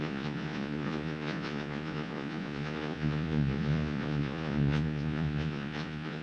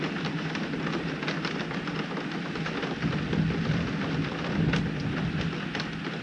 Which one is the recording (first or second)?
second